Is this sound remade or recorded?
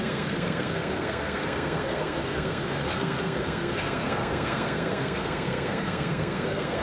remade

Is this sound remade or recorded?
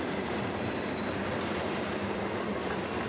recorded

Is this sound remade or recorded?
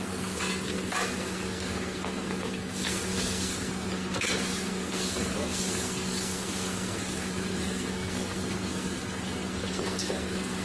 remade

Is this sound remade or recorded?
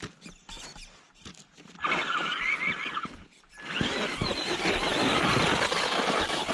recorded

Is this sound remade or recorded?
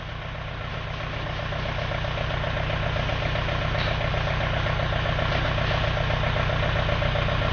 recorded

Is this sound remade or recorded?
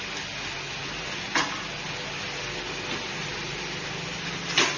recorded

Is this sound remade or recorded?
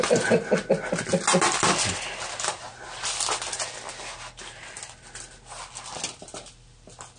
recorded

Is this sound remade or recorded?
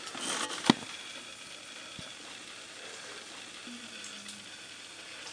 recorded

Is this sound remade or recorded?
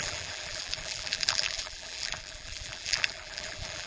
remade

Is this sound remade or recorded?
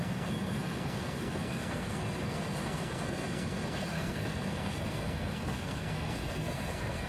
remade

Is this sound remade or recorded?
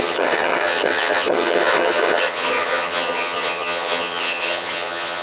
remade